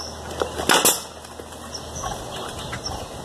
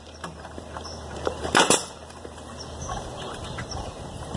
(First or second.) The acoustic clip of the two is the first